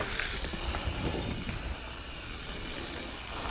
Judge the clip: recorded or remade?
remade